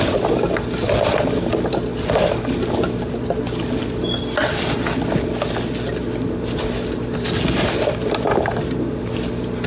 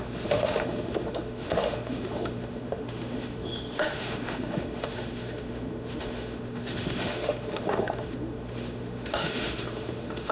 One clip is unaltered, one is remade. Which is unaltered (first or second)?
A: first